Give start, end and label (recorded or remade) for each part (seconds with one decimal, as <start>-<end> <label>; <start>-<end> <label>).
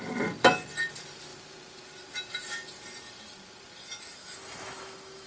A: 0.0-4.2 recorded; 4.2-5.3 remade